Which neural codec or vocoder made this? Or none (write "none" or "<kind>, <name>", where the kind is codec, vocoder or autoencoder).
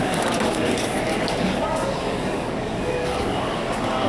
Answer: codec, DAC